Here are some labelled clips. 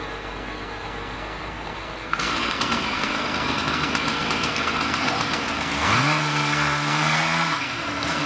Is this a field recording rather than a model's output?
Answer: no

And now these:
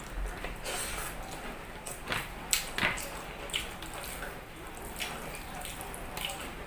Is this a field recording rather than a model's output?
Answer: yes